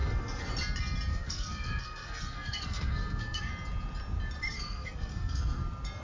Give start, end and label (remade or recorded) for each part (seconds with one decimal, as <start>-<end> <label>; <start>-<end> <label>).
0.0-0.5 remade; 0.5-1.1 recorded; 1.1-3.5 remade; 3.5-4.4 recorded; 4.4-5.6 remade; 5.6-6.0 recorded

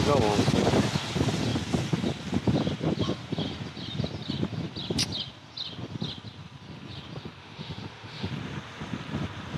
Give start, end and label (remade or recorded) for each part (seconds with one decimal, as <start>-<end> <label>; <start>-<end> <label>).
0.0-7.4 recorded; 7.4-8.3 remade; 8.3-9.6 recorded

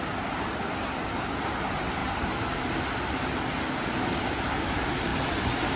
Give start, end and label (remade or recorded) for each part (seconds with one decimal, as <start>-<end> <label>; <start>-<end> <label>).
0.0-5.8 recorded

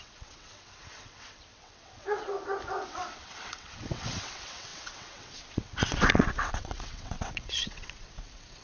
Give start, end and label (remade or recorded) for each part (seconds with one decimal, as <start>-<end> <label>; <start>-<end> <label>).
0.0-2.3 remade; 2.3-2.9 recorded; 2.9-8.6 remade

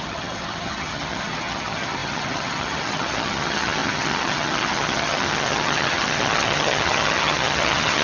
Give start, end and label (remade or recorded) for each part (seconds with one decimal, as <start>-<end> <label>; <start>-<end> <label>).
0.0-8.0 remade

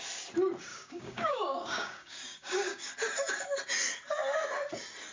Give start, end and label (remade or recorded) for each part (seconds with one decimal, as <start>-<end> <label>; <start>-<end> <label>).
0.0-0.7 recorded; 0.7-2.9 remade; 2.9-5.1 recorded

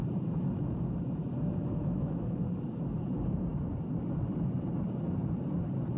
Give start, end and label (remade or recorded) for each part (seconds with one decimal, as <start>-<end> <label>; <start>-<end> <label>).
0.0-1.6 recorded; 1.6-2.4 remade; 2.4-6.0 recorded